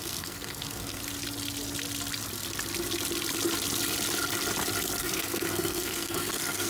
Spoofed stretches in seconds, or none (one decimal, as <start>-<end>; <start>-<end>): 0.0-1.0; 5.0-6.7